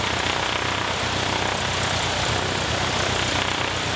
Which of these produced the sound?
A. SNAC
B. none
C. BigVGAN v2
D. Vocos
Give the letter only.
B